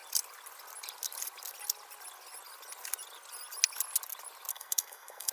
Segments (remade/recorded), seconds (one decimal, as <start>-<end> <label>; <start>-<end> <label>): 0.0-4.5 recorded; 4.5-5.3 remade